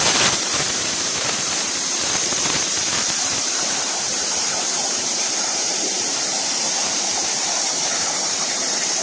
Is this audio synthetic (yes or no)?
yes